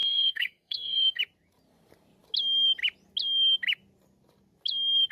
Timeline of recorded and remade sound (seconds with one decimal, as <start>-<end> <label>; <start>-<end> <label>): 0.0-1.2 remade; 1.2-5.1 recorded